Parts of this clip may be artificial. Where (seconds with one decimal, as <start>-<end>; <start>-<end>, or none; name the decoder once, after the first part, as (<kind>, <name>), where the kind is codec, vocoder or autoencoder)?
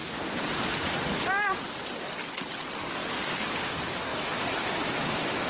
4.1-5.5 (autoencoder, DAC-VAE)